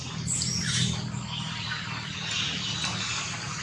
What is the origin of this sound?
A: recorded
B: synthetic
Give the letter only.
A